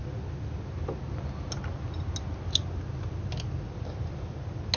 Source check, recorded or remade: recorded